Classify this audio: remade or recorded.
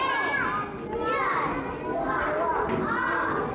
recorded